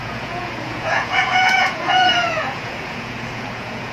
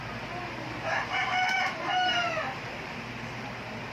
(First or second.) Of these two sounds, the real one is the second